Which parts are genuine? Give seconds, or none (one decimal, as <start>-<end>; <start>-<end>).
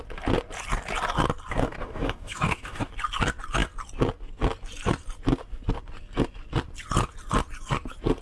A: 0.0-1.5; 2.9-8.2